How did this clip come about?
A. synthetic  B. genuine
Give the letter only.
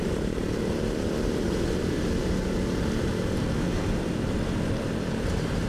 A